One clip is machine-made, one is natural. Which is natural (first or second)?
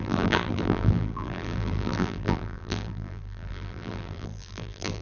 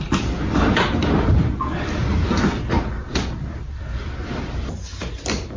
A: second